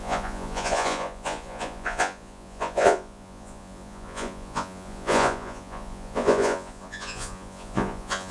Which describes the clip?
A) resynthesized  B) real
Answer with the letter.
A